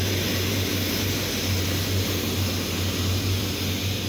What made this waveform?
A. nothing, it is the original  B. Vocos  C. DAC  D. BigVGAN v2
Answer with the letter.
A